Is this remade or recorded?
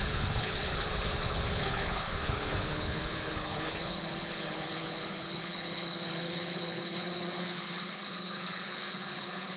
remade